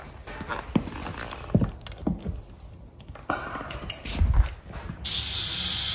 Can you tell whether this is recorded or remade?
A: recorded